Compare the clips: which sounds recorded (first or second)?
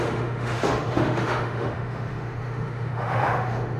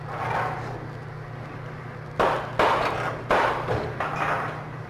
second